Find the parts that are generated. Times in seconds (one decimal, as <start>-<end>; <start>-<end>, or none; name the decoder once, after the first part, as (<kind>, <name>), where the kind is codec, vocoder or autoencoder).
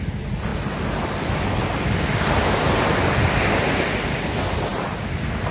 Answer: none